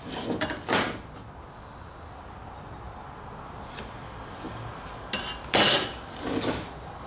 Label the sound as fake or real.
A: real